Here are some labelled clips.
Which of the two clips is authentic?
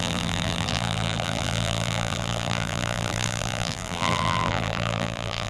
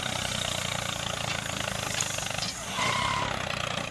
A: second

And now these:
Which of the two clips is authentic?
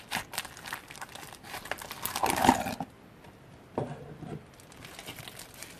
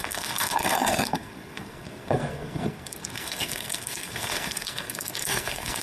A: first